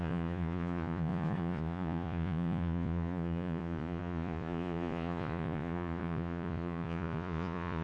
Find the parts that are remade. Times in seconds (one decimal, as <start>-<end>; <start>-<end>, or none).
0.0-7.8